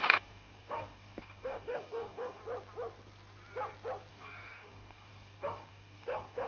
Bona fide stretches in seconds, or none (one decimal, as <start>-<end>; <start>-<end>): 2.4-4.1